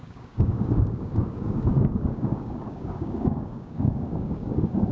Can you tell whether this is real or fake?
fake